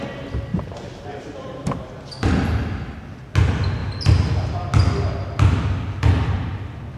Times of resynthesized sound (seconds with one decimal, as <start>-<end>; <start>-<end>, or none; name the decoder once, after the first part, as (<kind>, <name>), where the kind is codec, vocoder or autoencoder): 0.5-1.9 (vocoder, BigVGAN v2)